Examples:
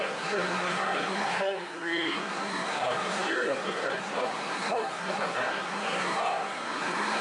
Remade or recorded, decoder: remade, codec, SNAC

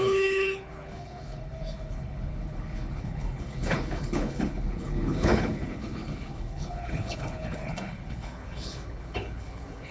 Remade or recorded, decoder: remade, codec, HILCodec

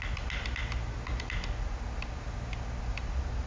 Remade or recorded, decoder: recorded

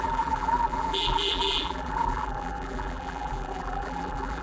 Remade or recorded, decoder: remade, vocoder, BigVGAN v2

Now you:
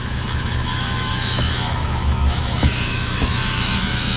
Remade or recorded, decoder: remade, autoencoder, DAC-VAE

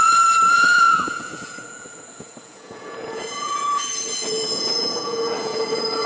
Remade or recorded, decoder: remade, vocoder, Vocos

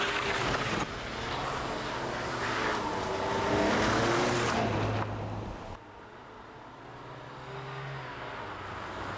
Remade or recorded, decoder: recorded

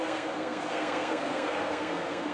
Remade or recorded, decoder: remade, codec, SNAC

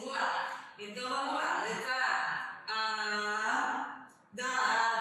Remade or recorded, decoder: remade, codec, DAC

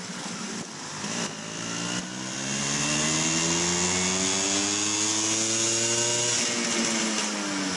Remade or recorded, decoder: recorded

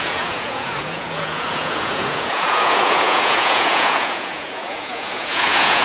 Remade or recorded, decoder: remade, vocoder, Vocos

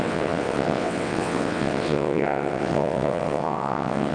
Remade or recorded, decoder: remade, vocoder, WaveNeXt